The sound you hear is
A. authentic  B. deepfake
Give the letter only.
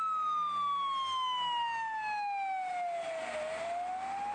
A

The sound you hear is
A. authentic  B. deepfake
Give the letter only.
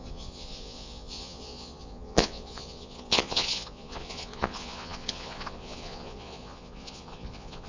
B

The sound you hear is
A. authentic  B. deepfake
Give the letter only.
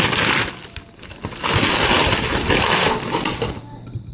A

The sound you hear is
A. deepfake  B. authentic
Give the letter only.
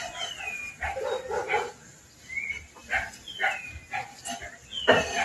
B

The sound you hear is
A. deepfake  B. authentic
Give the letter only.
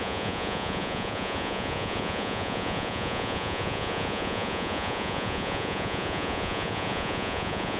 A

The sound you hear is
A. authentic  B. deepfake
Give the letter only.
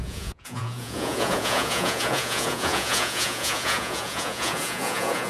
B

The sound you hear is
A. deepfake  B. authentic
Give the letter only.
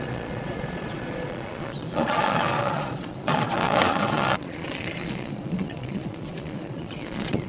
A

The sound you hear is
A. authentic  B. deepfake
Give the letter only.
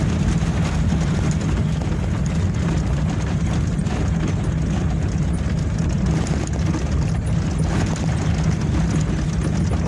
A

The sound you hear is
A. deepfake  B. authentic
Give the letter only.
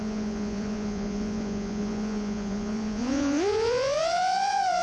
A